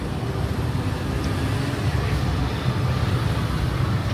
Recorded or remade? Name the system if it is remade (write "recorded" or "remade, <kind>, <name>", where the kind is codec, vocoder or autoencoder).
recorded